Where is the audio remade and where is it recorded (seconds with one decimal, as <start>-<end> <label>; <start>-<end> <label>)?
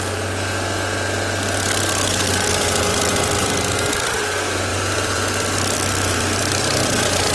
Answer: 0.0-2.9 recorded; 2.9-3.5 remade; 3.5-4.7 recorded; 4.7-7.3 remade